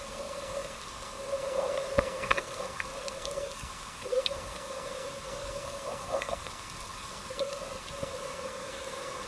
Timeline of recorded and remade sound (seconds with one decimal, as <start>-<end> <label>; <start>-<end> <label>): 0.0-9.3 remade